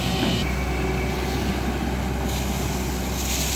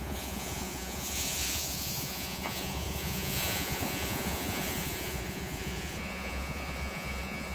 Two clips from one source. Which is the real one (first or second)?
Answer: first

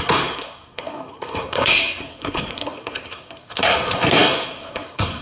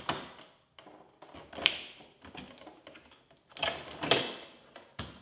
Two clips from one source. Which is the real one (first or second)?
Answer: second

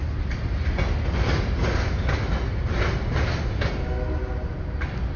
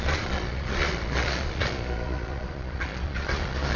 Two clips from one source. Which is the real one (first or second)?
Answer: first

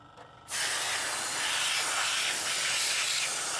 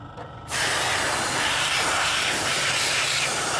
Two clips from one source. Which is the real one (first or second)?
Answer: first